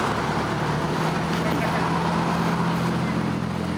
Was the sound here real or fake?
real